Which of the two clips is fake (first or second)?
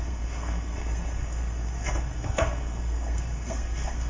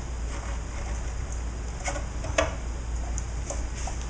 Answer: first